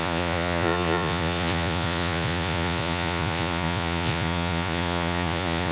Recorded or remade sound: remade